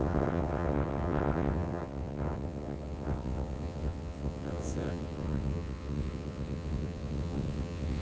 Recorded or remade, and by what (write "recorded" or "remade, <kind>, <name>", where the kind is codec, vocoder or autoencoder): remade, vocoder, WaveNeXt